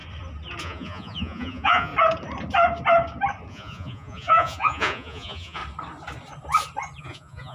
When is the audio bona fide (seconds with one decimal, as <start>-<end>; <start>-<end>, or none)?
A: 0.0-0.6; 1.9-3.5; 5.6-7.0